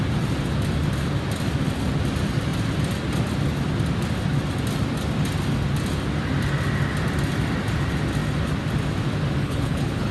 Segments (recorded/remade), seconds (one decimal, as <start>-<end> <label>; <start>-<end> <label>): 0.0-9.4 recorded; 9.4-10.1 remade